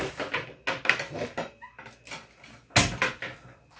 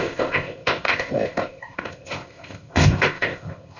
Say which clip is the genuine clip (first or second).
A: first